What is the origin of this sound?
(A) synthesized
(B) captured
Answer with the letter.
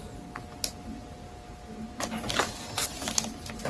B